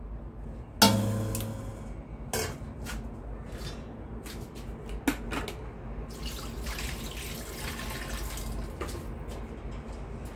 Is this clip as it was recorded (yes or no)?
yes